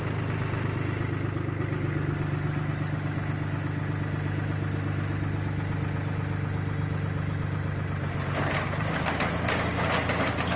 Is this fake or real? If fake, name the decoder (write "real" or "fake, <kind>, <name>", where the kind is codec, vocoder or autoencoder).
real